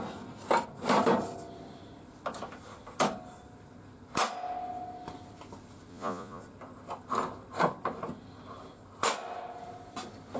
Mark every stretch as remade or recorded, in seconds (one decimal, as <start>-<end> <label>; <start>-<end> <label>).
0.0-5.9 recorded; 5.9-6.4 remade; 6.4-10.4 recorded